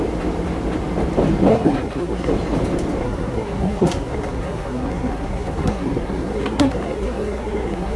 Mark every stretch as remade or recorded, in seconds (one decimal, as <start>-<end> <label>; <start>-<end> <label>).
0.0-1.5 recorded; 1.5-2.3 remade; 2.3-3.0 recorded; 3.0-8.0 remade